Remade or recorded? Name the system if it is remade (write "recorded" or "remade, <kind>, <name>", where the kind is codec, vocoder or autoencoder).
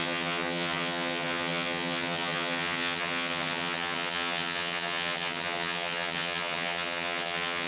remade, vocoder, HiFi-GAN